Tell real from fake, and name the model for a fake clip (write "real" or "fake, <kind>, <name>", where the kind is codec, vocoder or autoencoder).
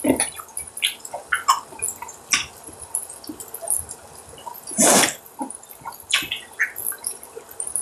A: real